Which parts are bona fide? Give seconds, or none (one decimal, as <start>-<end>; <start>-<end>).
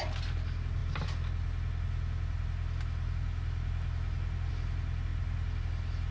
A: 0.0-6.1